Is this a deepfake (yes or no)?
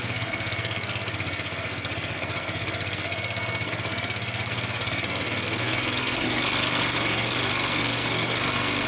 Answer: yes